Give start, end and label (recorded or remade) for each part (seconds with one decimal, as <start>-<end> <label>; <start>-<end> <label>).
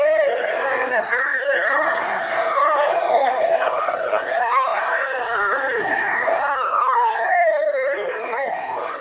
0.0-9.0 remade